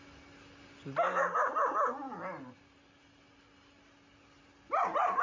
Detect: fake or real real